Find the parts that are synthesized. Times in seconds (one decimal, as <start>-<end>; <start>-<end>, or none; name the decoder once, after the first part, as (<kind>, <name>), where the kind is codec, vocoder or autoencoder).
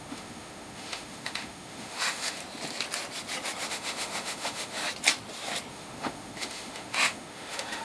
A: 0.0-2.4 (autoencoder, DAC-VAE); 3.7-4.8; 5.7-7.8